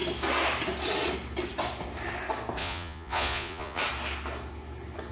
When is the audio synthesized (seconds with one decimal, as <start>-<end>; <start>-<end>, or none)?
2.6-3.8